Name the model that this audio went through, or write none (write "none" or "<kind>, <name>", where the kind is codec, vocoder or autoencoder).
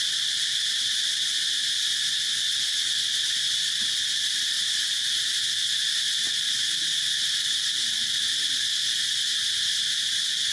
none